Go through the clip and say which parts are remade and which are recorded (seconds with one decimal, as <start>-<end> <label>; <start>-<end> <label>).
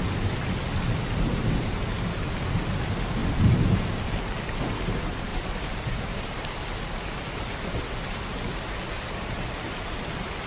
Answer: 0.0-3.2 recorded; 3.2-4.0 remade; 4.0-5.3 recorded; 5.3-6.6 remade; 6.6-10.5 recorded